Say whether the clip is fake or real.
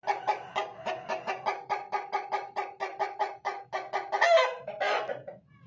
real